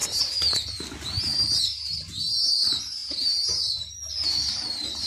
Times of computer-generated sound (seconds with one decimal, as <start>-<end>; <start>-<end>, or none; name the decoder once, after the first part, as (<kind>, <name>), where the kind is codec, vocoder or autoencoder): none